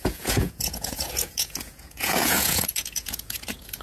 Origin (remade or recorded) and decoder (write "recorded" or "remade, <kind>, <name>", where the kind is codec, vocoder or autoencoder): remade, vocoder, Vocos